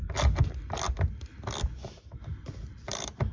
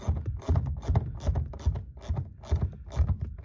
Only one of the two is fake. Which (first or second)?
first